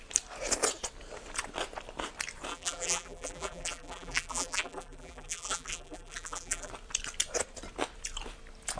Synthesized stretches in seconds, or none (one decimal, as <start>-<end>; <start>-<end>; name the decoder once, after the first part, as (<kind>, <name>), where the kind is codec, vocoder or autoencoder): 2.5-6.7 (vocoder, BigVGAN v2)